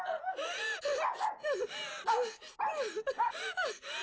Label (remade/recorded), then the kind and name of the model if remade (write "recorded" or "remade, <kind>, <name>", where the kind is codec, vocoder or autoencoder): recorded